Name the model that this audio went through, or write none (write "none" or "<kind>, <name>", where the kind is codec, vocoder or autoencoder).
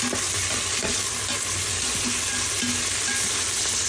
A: none